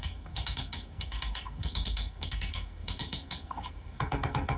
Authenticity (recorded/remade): remade